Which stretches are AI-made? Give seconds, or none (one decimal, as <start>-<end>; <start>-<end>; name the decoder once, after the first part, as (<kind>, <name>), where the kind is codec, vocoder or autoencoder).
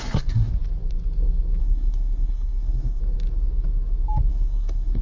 0.0-0.5 (codec, SNAC); 1.6-3.0; 4.3-5.0